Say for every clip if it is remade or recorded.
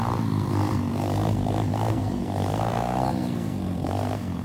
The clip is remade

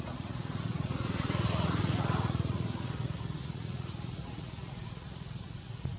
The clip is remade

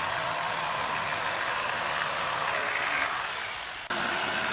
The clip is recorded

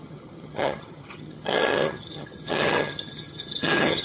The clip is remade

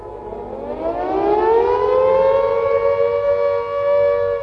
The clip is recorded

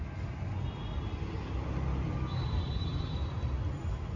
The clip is recorded